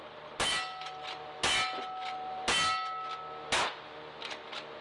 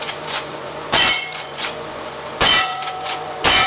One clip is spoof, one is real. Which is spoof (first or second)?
second